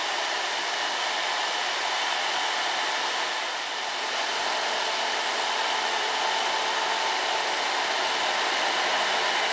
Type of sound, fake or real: real